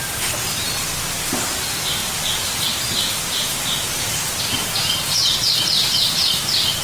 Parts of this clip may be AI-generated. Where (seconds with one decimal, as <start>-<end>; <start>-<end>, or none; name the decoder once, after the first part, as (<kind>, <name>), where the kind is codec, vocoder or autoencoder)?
none